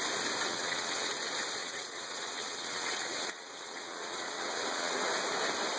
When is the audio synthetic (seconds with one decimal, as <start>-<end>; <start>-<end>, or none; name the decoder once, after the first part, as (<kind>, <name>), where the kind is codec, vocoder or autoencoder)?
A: 0.4-1.1 (vocoder, WaveNeXt); 1.6-5.1